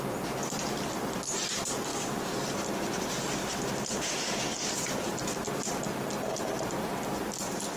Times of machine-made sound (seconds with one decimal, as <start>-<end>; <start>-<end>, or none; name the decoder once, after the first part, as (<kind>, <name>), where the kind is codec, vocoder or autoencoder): 1.9-5.5 (vocoder, BigVGAN v2)